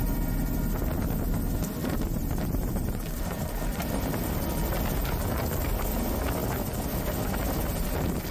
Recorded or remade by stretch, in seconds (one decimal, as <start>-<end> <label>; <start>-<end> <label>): 0.0-1.8 recorded; 1.8-3.9 remade; 3.9-8.3 recorded